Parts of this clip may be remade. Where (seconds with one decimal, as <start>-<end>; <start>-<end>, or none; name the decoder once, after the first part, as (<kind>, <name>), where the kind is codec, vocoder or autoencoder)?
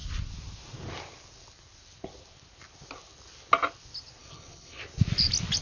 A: 4.2-4.8 (codec, HILCodec)